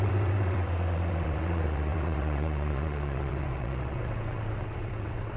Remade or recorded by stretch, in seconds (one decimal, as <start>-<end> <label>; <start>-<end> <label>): 0.0-5.4 remade